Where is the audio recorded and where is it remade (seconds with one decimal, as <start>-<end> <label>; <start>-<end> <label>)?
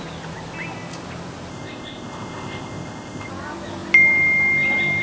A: 0.0-1.5 recorded; 1.5-3.3 remade; 3.3-5.0 recorded